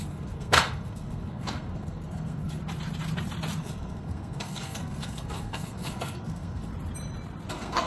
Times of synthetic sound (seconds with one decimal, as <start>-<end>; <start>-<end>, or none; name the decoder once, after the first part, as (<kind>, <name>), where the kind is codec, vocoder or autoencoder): 0.0-2.6 (codec, SNAC); 3.6-6.7; 7.5-7.9